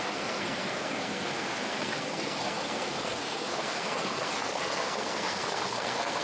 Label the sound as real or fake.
fake